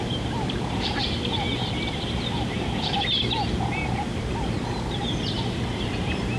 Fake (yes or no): yes